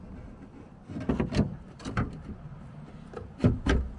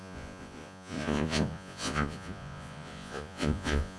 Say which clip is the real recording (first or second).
first